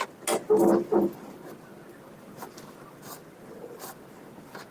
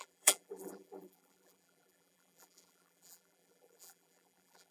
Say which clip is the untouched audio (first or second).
first